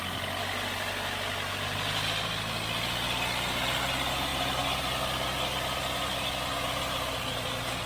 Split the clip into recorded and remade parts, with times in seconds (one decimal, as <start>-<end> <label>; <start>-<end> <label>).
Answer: 0.0-7.9 recorded